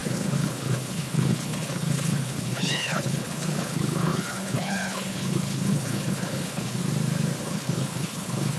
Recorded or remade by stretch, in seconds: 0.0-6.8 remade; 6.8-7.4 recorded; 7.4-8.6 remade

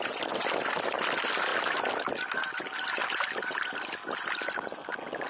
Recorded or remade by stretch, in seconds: 0.0-5.3 recorded

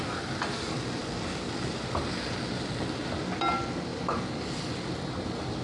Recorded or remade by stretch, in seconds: 0.0-5.6 recorded